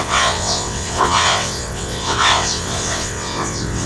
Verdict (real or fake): fake